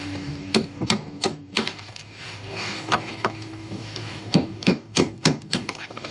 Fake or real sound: fake